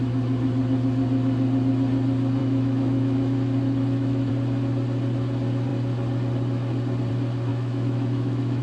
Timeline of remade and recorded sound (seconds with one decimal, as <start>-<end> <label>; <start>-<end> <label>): 0.0-2.4 recorded; 2.4-4.3 remade; 4.3-7.5 recorded; 7.5-8.6 remade